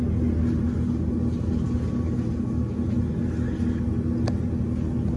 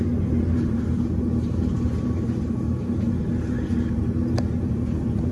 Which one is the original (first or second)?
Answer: first